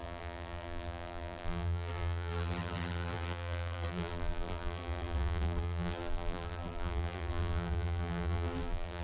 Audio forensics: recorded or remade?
remade